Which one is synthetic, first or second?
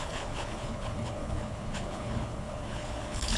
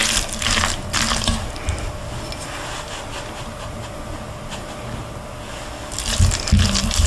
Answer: first